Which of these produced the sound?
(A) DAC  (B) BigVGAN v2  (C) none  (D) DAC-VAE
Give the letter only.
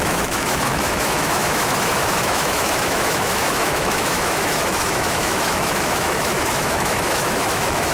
D